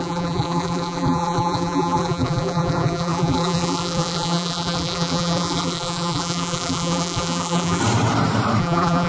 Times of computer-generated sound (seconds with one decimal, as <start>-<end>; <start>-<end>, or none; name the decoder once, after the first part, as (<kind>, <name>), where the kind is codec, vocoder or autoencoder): 0.0-7.8 (vocoder, BigVGAN v2); 8.6-9.1

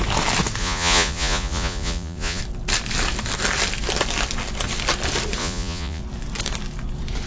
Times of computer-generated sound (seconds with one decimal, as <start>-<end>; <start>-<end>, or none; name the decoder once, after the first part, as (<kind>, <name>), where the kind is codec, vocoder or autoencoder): 0.6-2.4 (vocoder, Vocos); 5.4-6.0